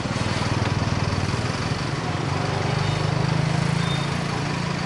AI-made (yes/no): no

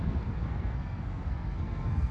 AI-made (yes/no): yes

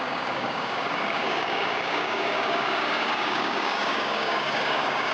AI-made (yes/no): yes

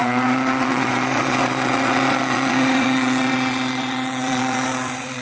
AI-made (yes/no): yes